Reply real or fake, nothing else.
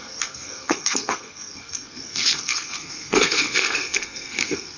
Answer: fake